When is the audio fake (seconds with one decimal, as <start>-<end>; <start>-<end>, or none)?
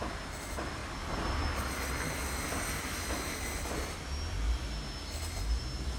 none